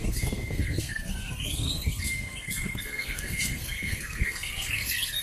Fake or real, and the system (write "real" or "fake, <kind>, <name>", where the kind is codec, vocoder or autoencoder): fake, codec, SNAC